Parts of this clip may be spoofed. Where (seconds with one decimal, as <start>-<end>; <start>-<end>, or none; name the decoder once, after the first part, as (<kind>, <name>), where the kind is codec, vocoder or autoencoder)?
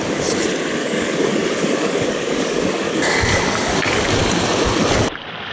0.8-4.1 (codec, DAC)